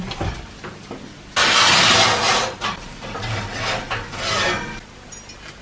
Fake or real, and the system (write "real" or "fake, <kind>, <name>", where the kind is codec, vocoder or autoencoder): real